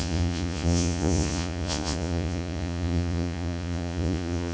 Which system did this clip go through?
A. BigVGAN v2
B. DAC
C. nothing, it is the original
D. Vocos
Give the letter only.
D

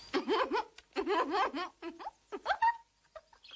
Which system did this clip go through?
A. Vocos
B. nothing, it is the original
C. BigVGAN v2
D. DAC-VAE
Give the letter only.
B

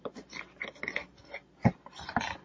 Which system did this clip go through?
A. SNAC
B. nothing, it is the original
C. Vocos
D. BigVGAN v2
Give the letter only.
B